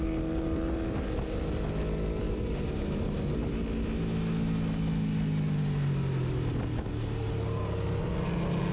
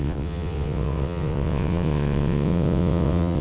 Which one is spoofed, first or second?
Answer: second